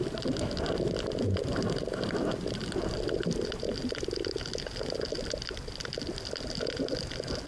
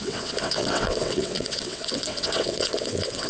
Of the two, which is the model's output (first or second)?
second